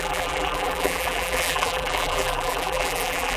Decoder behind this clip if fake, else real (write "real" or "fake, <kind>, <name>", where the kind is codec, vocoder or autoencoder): fake, vocoder, BigVGAN v2